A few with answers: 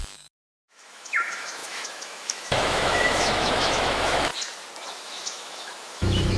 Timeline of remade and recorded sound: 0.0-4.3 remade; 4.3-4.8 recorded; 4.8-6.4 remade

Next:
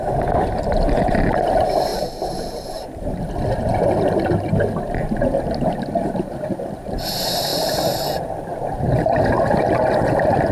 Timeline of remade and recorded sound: 0.0-10.5 recorded

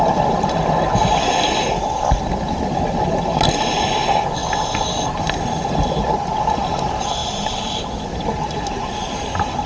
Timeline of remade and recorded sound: 0.0-9.7 recorded